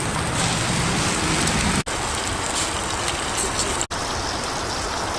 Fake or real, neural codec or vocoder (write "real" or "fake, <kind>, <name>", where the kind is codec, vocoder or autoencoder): real